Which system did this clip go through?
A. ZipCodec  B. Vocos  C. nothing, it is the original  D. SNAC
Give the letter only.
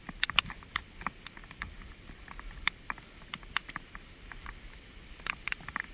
C